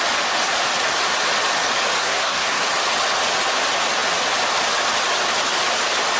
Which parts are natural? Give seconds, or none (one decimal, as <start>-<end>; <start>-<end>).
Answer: 0.0-2.0; 2.6-6.2